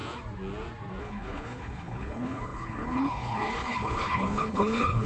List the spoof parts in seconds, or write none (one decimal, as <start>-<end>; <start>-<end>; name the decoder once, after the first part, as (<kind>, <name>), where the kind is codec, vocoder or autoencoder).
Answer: 1.0-5.1 (codec, HILCodec)